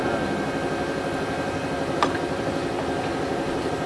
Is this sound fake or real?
real